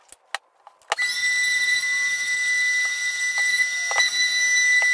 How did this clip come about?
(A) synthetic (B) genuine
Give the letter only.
B